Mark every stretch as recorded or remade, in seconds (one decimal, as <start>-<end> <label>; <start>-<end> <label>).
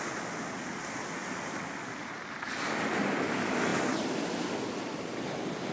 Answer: 0.0-5.7 recorded